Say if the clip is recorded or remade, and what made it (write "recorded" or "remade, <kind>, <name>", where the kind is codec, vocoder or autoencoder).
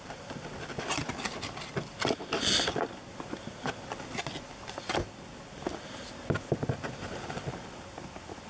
recorded